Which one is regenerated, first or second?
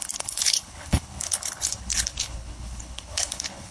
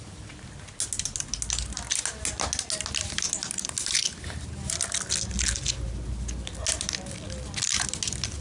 first